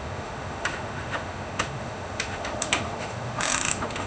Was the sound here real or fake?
fake